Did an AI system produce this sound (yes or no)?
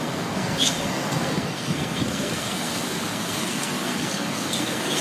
yes